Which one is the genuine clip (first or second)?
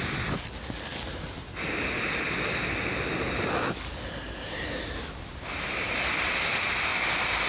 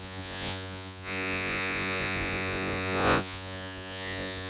first